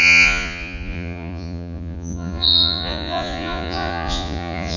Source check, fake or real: fake